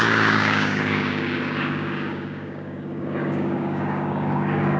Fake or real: fake